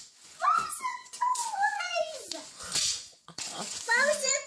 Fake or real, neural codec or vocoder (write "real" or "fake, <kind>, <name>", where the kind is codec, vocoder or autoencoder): fake, vocoder, Vocos